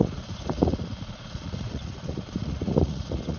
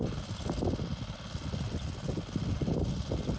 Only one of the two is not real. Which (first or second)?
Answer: first